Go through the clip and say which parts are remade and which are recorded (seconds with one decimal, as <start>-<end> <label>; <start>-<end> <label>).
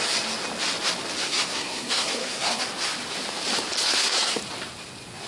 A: 0.0-1.2 recorded; 1.2-2.6 remade; 2.6-3.9 recorded; 3.9-4.4 remade; 4.4-5.3 recorded